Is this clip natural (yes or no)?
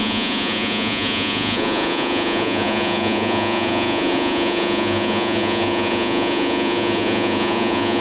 no